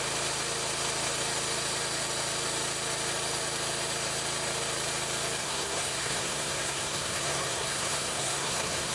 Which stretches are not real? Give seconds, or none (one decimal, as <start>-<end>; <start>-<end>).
5.4-8.9